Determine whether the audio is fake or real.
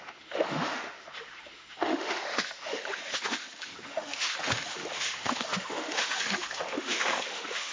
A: fake